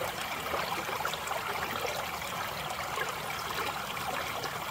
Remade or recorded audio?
recorded